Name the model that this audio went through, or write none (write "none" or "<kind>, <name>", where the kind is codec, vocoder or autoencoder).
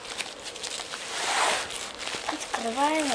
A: none